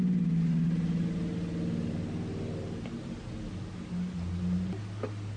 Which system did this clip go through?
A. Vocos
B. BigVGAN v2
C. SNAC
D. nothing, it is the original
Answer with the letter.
D